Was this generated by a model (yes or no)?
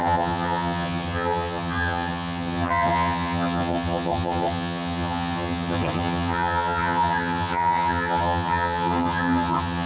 yes